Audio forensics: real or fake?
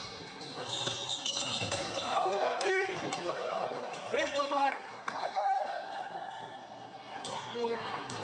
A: fake